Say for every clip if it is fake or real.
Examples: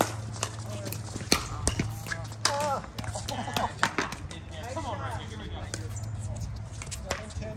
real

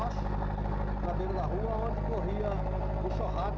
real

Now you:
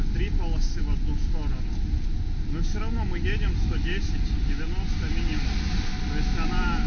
real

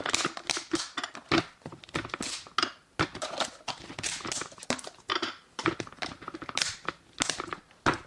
real